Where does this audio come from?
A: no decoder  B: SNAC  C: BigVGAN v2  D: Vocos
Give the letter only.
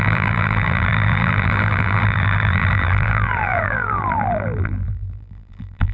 C